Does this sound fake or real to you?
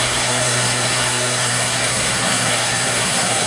fake